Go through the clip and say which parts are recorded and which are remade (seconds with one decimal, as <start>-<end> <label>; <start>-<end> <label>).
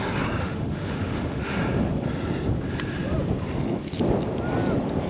0.0-0.4 recorded; 0.4-1.6 remade; 1.6-5.1 recorded